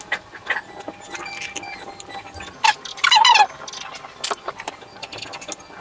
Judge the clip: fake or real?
real